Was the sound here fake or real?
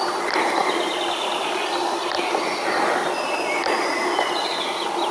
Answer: real